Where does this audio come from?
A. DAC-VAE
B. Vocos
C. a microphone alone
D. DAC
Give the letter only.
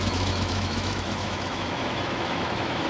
A